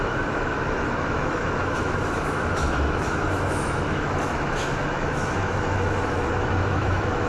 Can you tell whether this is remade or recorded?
remade